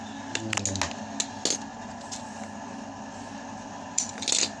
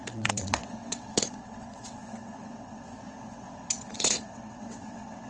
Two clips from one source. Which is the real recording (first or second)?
first